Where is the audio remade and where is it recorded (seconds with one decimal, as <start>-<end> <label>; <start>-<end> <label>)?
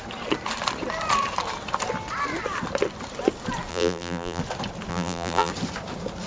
0.0-3.7 recorded; 3.7-4.4 remade; 4.4-4.9 recorded; 4.9-5.5 remade; 5.5-6.3 recorded